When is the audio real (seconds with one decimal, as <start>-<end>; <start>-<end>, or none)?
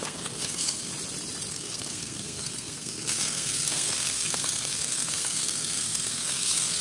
0.9-1.5